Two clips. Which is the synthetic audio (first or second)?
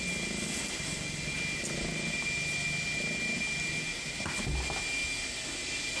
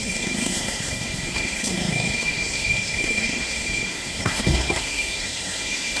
second